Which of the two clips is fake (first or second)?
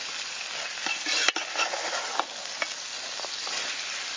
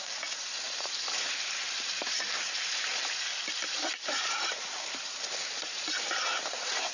second